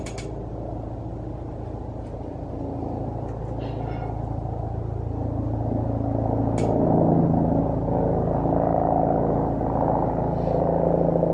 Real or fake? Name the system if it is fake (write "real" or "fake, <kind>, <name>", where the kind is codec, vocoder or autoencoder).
real